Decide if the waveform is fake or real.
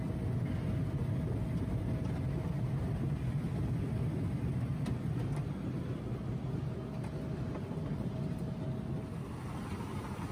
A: real